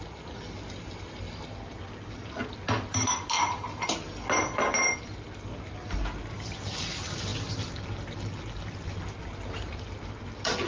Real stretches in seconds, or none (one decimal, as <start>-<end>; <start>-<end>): 0.0-10.7